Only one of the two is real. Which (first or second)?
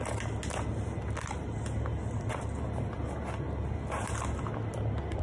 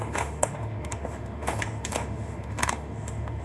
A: first